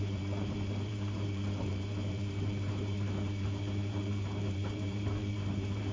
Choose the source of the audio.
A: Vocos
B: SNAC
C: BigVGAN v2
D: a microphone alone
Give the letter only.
C